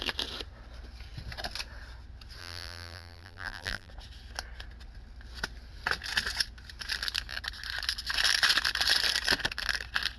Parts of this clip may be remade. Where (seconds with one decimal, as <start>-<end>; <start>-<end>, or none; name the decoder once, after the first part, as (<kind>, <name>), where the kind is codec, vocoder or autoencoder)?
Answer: 2.4-3.9 (vocoder, BigVGAN v2)